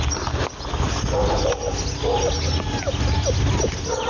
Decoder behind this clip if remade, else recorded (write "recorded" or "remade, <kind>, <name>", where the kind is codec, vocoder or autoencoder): recorded